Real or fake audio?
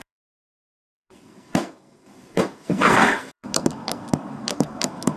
fake